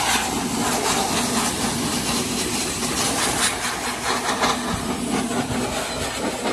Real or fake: real